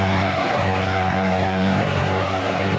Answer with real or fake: fake